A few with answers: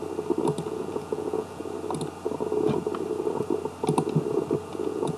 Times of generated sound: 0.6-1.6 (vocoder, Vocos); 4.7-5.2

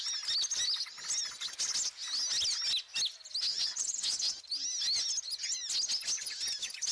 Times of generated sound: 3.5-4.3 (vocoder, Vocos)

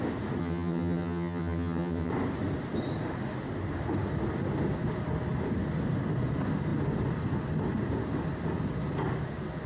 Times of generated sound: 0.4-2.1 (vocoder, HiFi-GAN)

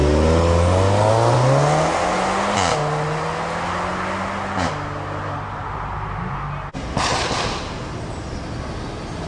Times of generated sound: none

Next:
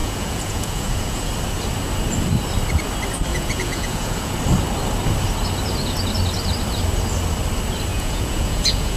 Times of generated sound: 0.0-1.3 (vocoder, Vocos); 3.3-4.3; 7.9-9.0

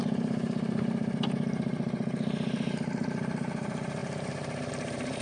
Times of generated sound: 0.0-5.2 (vocoder, BigVGAN v2)

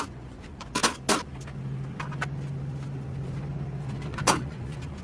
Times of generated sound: 0.0-0.8 (vocoder, Vocos); 3.8-5.0

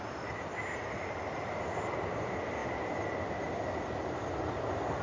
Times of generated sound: 1.0-1.5 (vocoder, BigVGAN v2)